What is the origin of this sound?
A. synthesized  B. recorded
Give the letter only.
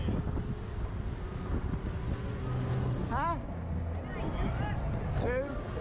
B